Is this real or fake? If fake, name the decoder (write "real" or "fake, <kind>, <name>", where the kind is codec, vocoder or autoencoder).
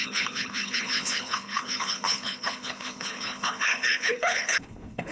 fake, codec, HILCodec